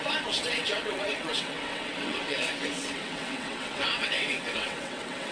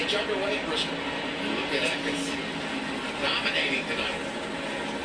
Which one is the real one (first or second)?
second